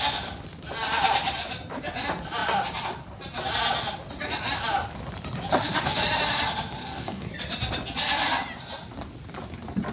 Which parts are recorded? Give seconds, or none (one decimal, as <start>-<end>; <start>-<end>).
0.0-6.8; 7.3-9.9